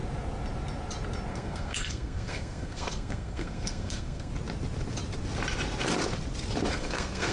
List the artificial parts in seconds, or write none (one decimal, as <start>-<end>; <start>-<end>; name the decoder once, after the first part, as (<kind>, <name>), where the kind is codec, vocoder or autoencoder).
1.3-4.3 (codec, SNAC); 6.7-7.3